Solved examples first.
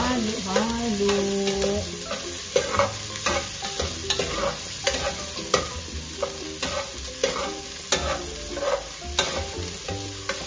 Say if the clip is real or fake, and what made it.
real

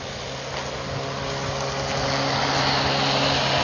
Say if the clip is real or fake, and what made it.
real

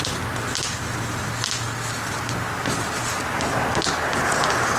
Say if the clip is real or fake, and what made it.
real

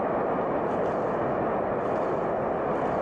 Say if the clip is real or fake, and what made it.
real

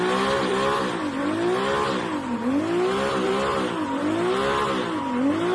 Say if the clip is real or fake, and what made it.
real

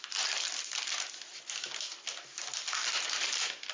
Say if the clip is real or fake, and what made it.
real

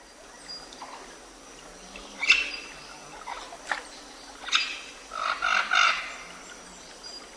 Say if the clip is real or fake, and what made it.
real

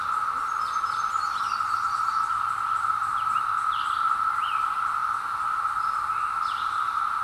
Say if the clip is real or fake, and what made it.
real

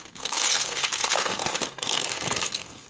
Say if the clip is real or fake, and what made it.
fake, codec, SNAC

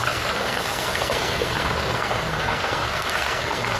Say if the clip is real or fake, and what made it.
fake, codec, SNAC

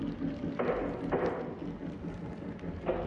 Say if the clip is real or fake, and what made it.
real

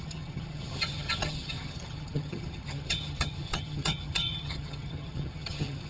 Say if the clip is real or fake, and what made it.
fake, vocoder, HiFi-GAN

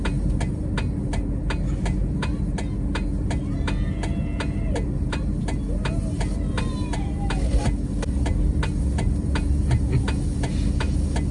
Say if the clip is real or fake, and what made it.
real